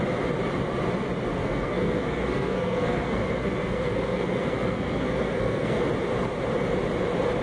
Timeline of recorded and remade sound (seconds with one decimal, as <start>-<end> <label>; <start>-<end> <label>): 0.0-1.4 recorded; 1.4-5.8 remade; 5.8-7.4 recorded